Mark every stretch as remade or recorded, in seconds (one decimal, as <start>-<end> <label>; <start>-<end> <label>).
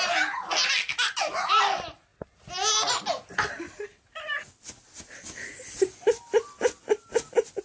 0.0-7.6 recorded